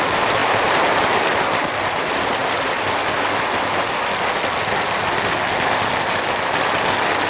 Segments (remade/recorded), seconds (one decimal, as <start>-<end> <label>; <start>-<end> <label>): 0.0-7.3 recorded